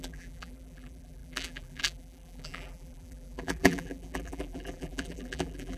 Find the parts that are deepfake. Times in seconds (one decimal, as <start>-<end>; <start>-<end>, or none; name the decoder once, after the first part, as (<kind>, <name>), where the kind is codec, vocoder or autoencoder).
0.0-5.8 (vocoder, BigVGAN v2)